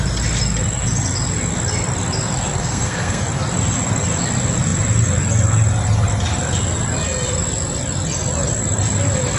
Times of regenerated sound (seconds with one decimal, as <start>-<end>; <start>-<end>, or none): 2.6-3.2